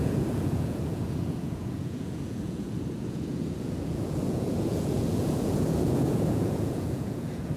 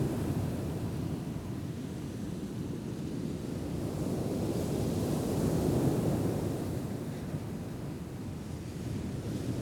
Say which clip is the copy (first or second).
first